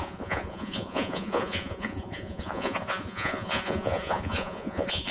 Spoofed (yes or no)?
yes